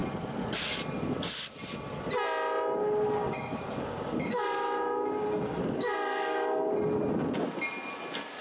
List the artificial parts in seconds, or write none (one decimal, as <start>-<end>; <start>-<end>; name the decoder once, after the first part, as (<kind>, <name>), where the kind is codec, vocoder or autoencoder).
3.2-6.7 (codec, DAC)

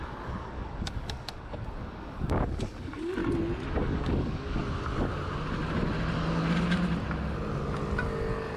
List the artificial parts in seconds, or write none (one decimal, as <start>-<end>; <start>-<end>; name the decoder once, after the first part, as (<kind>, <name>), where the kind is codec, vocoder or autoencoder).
0.0-3.2 (codec, DAC); 3.8-4.6

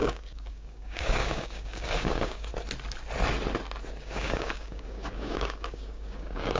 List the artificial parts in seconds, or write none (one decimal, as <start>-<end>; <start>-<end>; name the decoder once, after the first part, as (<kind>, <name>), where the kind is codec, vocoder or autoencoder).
0.0-2.5 (codec, DAC); 4.0-6.6

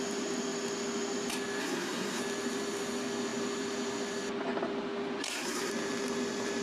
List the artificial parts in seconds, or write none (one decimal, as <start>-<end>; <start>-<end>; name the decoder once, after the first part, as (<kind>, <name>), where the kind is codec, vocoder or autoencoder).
1.6-2.2 (codec, SNAC); 5.2-5.7

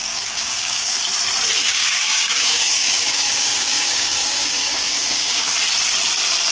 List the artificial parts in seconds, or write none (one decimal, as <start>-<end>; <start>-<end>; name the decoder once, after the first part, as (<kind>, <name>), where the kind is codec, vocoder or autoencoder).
0.0-1.0 (codec, DAC); 1.6-5.5